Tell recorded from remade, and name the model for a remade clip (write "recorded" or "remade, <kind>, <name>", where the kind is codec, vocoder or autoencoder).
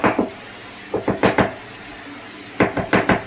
recorded